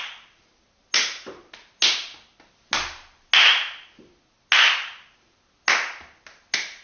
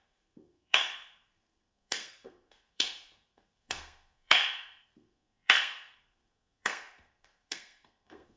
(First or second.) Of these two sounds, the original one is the first